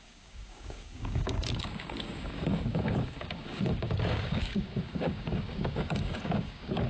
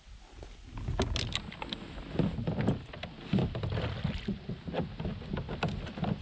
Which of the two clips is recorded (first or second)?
second